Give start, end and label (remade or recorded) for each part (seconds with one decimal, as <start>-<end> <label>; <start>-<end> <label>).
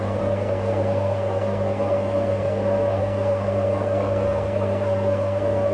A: 0.0-5.7 remade